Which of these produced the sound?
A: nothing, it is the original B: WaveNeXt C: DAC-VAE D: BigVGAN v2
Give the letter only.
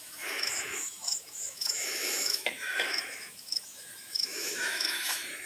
C